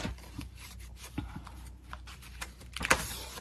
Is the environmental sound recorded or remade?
remade